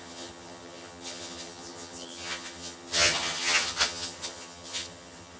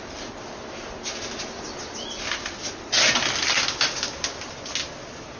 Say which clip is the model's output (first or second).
first